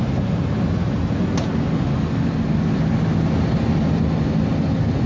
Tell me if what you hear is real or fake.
real